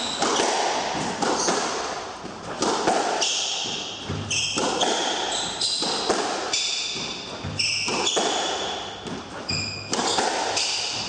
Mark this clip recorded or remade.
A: recorded